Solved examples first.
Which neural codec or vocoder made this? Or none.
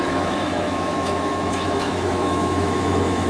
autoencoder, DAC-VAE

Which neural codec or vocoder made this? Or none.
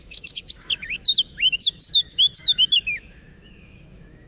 autoencoder, DAC-VAE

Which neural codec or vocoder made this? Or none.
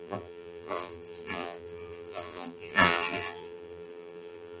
vocoder, BigVGAN v2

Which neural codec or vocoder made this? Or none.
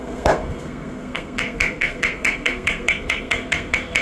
codec, SNAC